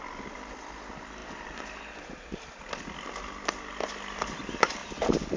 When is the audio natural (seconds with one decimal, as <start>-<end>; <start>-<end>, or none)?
0.0-5.4